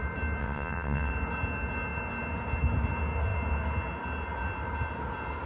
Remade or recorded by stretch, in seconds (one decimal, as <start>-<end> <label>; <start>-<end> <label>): 0.0-0.4 recorded; 0.4-1.1 remade; 1.1-5.5 recorded